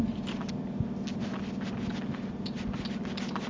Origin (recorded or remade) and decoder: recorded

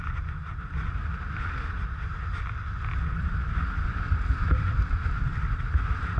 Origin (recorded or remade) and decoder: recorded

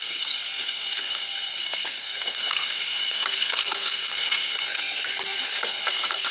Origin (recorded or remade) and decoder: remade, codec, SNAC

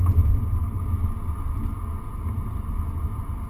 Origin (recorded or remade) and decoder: recorded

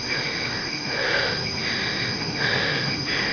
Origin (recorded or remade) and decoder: remade, autoencoder, DAC-VAE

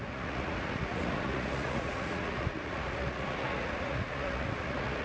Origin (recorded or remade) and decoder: remade, vocoder, Vocos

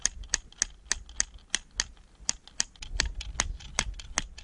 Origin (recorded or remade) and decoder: recorded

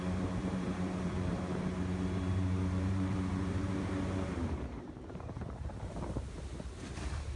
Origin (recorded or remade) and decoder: remade, vocoder, BigVGAN v2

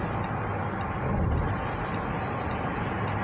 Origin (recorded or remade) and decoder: recorded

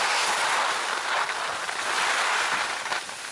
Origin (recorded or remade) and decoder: recorded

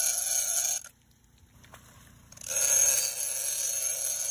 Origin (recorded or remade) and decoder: recorded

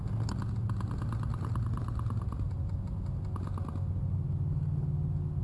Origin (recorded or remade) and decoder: recorded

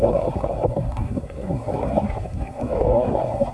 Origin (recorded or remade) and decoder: remade, codec, SNAC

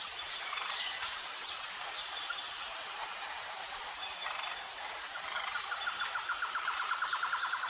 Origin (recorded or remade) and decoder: recorded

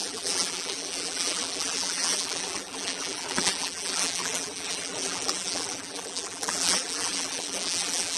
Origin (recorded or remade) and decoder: remade, vocoder, BigVGAN v2